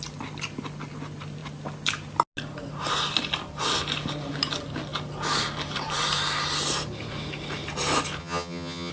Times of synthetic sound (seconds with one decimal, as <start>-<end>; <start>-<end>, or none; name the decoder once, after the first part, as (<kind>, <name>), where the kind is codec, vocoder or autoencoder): 8.2-8.9 (vocoder, HiFi-GAN)